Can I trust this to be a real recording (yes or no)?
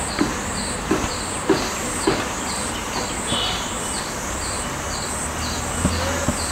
yes